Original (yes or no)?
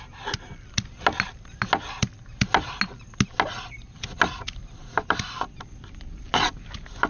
yes